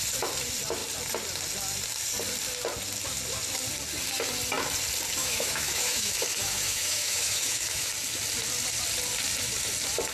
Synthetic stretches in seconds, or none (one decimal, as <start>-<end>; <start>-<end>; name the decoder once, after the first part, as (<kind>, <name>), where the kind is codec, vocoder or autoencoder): 5.2-7.9 (autoencoder, DAC-VAE)